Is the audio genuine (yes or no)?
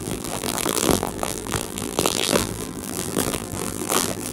no